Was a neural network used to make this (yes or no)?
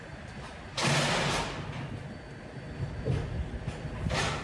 no